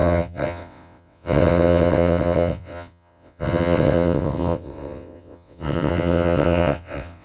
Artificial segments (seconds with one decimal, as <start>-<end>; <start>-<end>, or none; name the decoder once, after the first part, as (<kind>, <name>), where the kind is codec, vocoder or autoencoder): 0.0-7.2 (vocoder, WaveNeXt)